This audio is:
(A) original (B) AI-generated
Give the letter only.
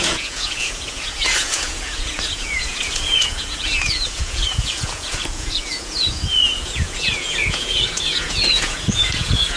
B